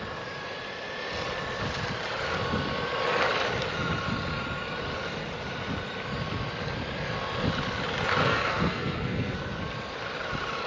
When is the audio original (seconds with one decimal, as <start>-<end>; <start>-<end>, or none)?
0.0-8.2; 9.6-10.7